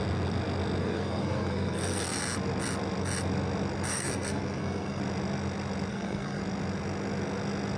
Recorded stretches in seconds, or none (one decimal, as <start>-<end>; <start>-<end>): 0.0-0.8; 2.2-3.9; 5.0-5.9; 6.4-7.8